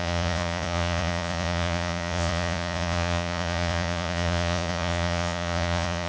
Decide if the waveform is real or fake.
fake